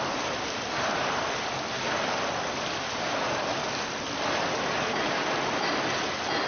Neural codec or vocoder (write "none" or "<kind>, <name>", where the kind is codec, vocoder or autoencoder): none